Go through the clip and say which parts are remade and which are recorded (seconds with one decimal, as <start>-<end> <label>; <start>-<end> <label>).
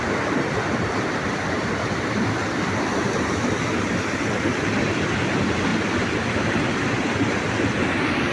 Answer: 0.0-8.3 recorded